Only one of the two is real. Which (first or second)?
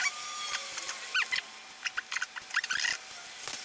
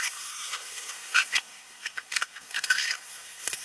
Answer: first